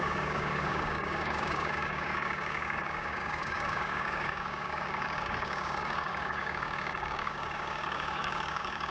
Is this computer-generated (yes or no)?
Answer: yes